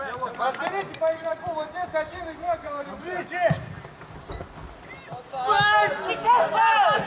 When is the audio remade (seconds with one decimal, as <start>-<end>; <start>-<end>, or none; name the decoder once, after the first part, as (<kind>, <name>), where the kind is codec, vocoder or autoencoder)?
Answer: 1.3-3.3 (vocoder, BigVGAN v2)